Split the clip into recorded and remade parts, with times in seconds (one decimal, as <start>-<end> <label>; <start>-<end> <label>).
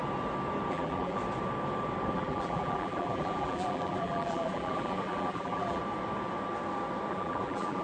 0.0-0.7 recorded; 0.7-1.2 remade; 1.2-2.1 recorded; 2.1-5.8 remade; 5.8-7.1 recorded; 7.1-7.8 remade